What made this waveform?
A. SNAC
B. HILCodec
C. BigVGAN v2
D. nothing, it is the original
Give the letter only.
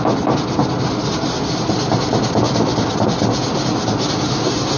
D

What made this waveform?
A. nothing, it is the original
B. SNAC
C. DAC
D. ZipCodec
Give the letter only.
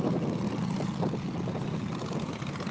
A